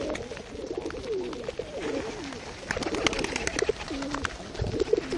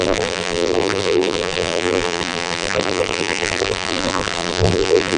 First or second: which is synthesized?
second